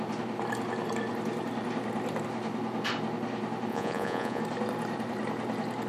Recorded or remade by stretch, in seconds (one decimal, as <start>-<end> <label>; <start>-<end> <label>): 0.0-3.7 recorded; 3.7-4.4 remade; 4.4-5.9 recorded